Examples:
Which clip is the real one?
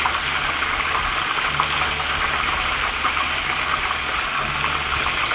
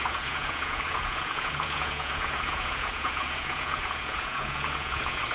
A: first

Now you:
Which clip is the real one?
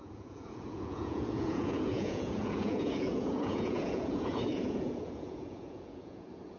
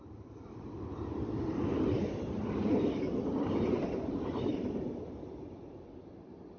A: second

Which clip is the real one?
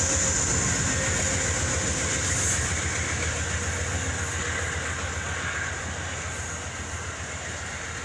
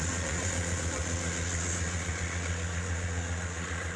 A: first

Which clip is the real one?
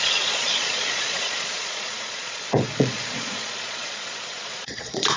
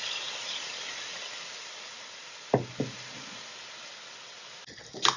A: second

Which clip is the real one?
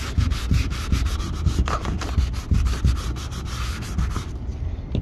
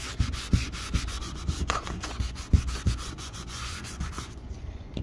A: first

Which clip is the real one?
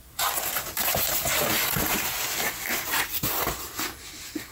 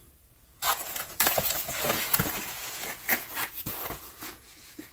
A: first